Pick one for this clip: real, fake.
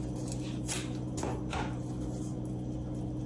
real